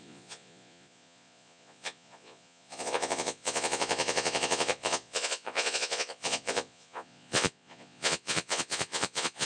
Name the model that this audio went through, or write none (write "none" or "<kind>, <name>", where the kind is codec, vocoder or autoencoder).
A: vocoder, Vocos